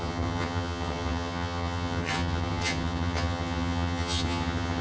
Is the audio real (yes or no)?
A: no